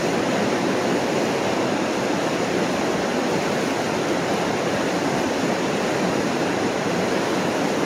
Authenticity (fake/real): real